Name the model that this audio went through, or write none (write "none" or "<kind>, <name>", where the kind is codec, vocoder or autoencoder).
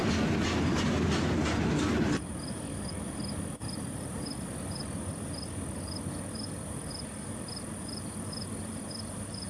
none